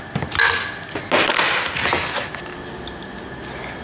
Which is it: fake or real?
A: real